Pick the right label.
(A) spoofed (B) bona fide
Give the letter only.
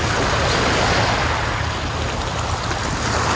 B